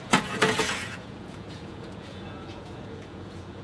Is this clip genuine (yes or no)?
no